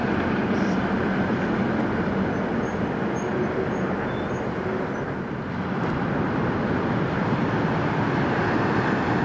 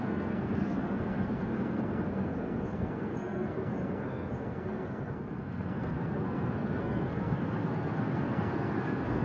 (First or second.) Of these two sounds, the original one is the first